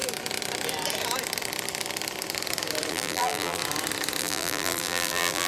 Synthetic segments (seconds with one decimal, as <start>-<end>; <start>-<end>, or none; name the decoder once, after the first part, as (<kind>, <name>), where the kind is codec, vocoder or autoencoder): 2.9-3.6 (vocoder, BigVGAN v2); 4.2-5.5